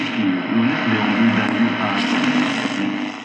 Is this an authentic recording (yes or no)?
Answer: yes